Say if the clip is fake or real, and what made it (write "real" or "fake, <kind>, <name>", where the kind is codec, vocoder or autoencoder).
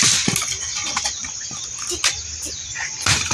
real